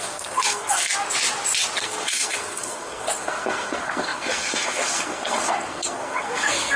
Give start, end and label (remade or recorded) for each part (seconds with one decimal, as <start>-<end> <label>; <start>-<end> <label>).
0.0-0.9 remade; 0.9-1.8 recorded; 1.8-6.8 remade